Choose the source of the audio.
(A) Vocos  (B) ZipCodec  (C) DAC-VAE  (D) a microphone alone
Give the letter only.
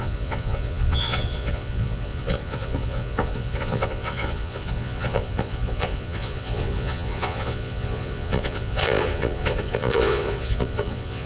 A